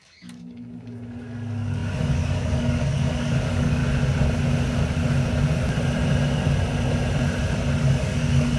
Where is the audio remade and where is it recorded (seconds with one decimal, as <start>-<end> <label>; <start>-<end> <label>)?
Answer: 0.0-3.8 remade; 3.8-7.8 recorded; 7.8-8.6 remade